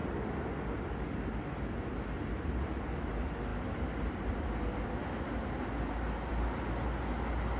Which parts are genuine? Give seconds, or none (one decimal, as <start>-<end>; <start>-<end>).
0.0-7.6